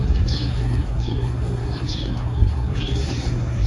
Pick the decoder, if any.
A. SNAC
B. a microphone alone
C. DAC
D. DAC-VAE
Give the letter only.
A